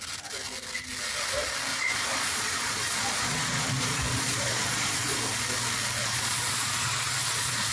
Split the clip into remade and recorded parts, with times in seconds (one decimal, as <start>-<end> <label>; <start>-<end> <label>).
0.0-1.7 recorded; 1.7-5.2 remade; 5.2-6.0 recorded; 6.0-7.7 remade